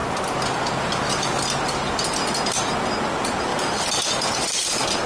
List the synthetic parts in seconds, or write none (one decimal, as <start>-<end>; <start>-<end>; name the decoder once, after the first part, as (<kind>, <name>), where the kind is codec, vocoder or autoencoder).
3.5-5.1 (vocoder, BigVGAN v2)